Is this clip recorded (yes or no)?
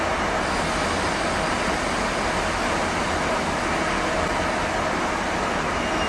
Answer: yes